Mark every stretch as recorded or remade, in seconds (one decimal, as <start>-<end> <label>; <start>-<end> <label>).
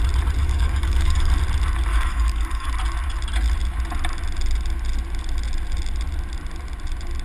0.0-0.4 recorded; 0.4-1.3 remade; 1.3-1.9 recorded; 1.9-2.7 remade; 2.7-7.2 recorded